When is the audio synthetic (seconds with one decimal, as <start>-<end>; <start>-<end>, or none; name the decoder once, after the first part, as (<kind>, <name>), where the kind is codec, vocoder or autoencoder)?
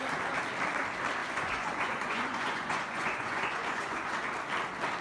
1.2-4.1 (vocoder, Vocos)